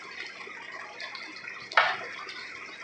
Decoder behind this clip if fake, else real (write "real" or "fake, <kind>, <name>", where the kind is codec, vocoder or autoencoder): real